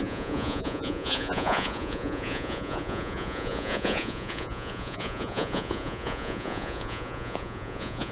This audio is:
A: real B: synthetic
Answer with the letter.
B